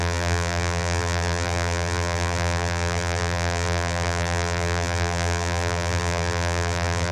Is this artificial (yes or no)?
yes